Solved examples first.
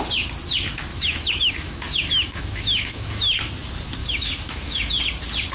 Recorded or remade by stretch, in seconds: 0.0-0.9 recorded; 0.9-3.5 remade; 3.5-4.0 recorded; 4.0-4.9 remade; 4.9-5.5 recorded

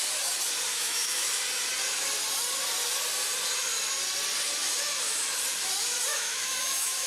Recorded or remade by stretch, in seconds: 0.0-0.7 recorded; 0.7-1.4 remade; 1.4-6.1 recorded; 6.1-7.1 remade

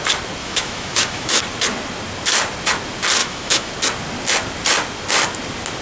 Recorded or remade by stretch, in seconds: 0.0-0.4 recorded; 0.4-1.4 remade; 1.4-3.2 recorded; 3.2-3.7 remade; 3.7-5.8 recorded